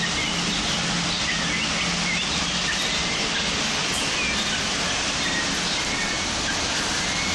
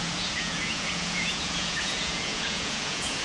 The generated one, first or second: second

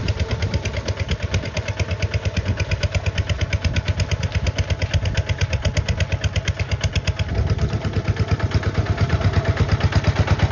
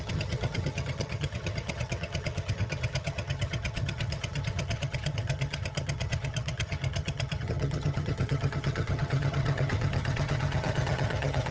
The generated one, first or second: second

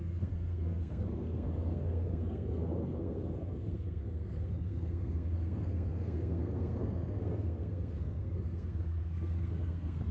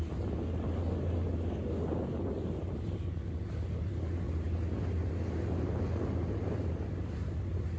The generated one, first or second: first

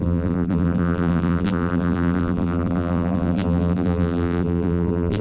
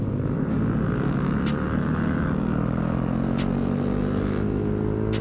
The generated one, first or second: first